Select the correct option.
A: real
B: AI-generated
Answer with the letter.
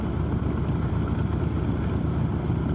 A